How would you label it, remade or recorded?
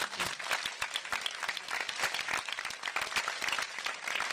recorded